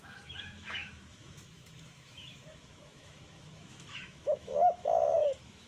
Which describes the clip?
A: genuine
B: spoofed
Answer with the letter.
B